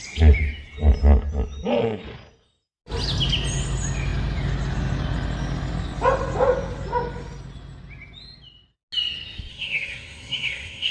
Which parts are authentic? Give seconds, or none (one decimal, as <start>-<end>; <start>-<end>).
0.0-9.5